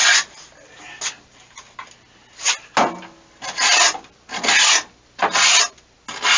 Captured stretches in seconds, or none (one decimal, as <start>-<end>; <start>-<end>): 0.0-6.4